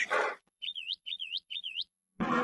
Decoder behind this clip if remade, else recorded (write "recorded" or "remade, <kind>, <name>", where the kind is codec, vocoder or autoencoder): remade, vocoder, Vocos